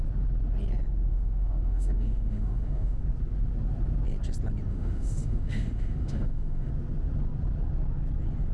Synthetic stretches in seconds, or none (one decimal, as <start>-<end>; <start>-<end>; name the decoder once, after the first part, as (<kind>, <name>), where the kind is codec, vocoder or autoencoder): 1.1-3.0 (autoencoder, DAC-VAE); 4.7-6.7